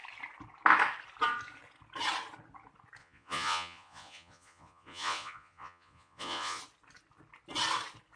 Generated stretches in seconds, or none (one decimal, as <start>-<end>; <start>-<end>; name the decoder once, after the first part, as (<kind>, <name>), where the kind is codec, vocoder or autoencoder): 3.0-6.6 (vocoder, Vocos)